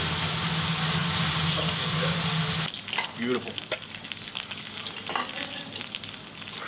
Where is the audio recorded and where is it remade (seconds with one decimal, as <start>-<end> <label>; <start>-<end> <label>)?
0.0-6.7 recorded